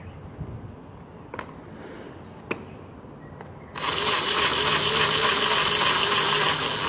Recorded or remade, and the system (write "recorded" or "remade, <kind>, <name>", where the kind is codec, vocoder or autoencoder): recorded